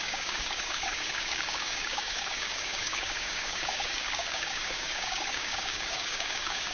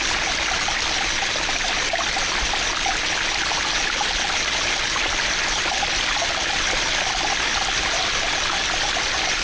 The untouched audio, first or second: second